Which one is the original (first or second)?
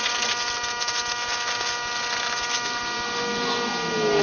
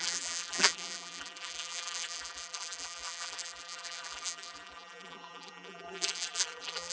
first